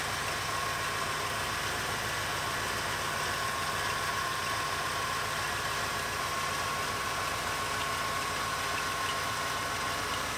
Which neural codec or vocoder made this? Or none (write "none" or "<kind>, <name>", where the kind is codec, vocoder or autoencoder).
none